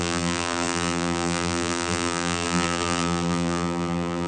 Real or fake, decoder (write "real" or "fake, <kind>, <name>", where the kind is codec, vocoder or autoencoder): fake, vocoder, BigVGAN v2